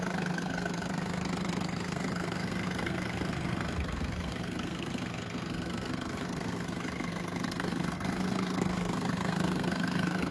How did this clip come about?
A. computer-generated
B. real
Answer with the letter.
A